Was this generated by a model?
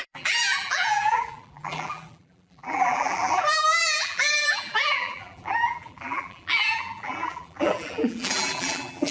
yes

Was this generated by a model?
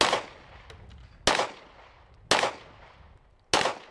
no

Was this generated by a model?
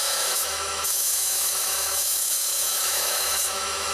yes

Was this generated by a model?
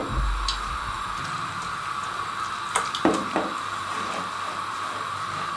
no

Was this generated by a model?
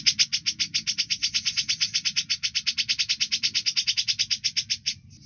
no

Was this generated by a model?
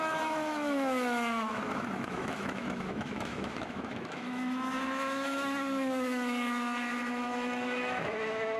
yes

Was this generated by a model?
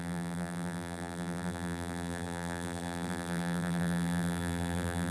yes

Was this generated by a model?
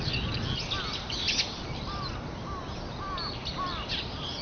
no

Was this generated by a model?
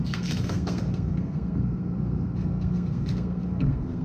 yes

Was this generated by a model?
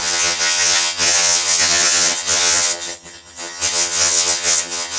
yes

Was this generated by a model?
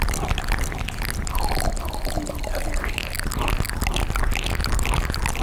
no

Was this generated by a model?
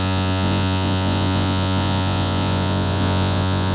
yes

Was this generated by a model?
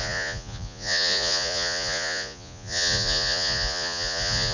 yes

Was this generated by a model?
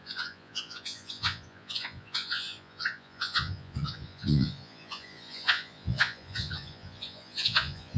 yes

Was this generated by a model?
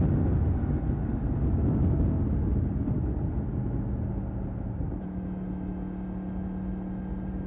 no